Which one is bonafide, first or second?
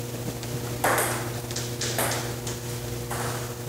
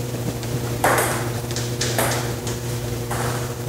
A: first